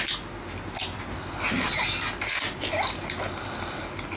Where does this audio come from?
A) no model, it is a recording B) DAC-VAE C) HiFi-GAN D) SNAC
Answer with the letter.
A